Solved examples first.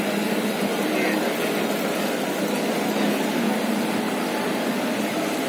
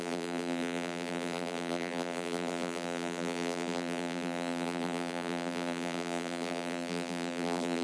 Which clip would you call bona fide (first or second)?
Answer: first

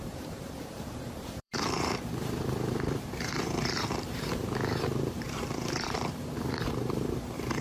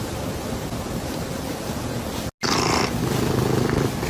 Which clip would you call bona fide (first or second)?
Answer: second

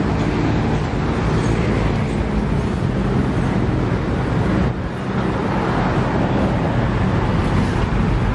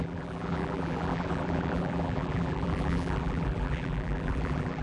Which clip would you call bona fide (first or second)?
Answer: first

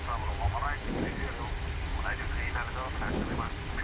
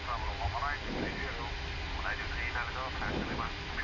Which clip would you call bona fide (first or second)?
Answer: second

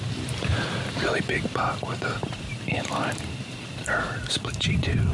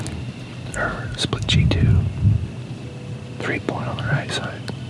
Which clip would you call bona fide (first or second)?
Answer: second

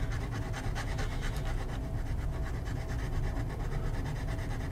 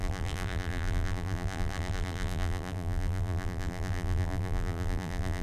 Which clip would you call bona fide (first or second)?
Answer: first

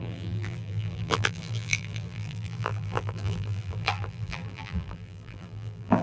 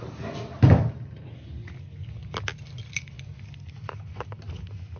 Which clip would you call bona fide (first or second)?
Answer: second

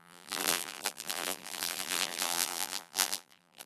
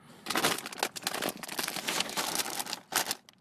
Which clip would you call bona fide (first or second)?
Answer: second